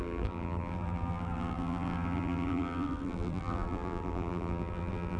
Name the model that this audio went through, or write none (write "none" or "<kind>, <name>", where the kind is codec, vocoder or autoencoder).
vocoder, BigVGAN v2